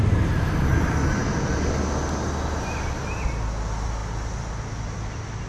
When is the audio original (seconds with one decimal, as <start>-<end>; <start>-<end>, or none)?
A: 0.0-5.5